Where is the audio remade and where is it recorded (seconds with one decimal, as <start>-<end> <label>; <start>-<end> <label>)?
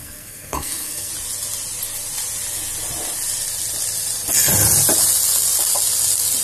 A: 0.0-1.1 remade; 1.1-6.4 recorded